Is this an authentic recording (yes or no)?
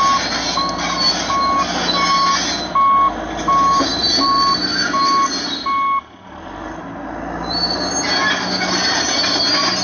yes